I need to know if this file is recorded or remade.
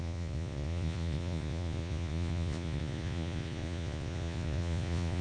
remade